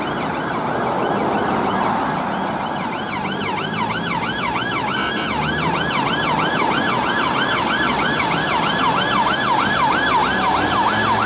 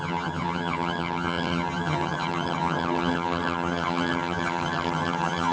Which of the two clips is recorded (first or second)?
first